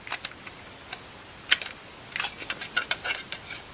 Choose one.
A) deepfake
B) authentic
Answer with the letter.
B